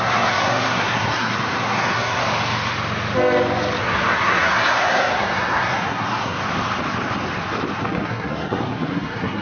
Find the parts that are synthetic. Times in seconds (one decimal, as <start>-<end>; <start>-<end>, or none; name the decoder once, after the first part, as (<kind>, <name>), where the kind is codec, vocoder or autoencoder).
0.0-2.2 (codec, SNAC); 3.8-6.4; 7.8-9.4